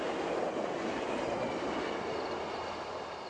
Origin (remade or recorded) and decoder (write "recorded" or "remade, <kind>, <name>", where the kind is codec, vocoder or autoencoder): recorded